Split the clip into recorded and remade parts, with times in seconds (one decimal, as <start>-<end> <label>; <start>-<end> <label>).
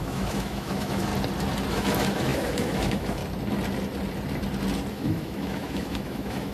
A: 0.0-1.1 remade; 1.1-1.7 recorded; 1.7-3.2 remade; 3.2-4.9 recorded; 4.9-6.5 remade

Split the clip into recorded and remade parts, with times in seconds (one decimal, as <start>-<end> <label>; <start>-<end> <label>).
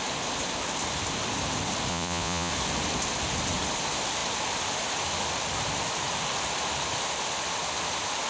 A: 0.0-1.9 recorded; 1.9-2.5 remade; 2.5-8.3 recorded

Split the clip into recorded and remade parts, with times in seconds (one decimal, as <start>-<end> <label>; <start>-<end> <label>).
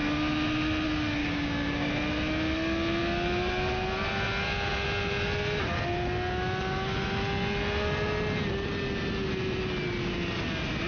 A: 0.0-1.2 recorded; 1.2-1.9 remade; 1.9-10.9 recorded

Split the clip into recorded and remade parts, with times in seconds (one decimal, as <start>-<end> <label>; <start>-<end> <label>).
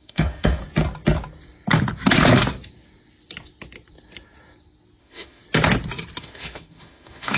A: 0.0-0.6 remade; 0.6-5.0 recorded; 5.0-5.4 remade; 5.4-6.2 recorded; 6.2-7.4 remade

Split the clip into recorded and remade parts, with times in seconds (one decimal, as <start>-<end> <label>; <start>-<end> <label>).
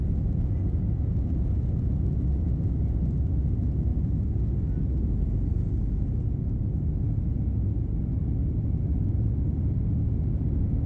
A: 0.0-10.9 recorded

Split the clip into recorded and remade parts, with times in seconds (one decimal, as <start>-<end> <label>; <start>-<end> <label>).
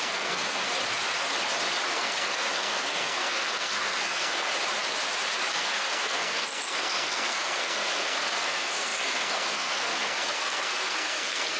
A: 0.0-0.7 remade; 0.7-1.9 recorded; 1.9-4.5 remade; 4.5-5.5 recorded; 5.5-11.6 remade